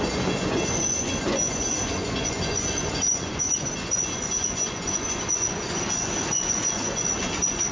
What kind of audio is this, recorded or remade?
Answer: remade